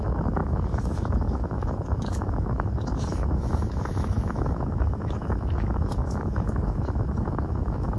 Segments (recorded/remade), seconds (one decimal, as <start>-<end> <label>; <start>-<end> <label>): 0.0-8.0 remade